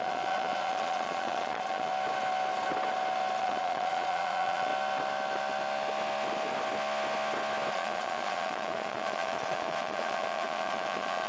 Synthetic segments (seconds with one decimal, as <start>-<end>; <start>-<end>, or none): 0.0-1.9; 3.4-4.7; 7.7-11.3